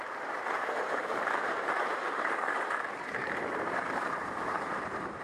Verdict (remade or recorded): remade